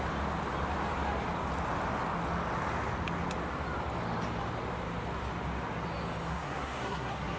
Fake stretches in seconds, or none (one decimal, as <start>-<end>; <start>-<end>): 6.3-7.4